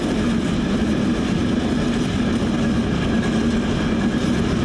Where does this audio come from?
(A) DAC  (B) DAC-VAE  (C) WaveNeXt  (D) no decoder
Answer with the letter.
D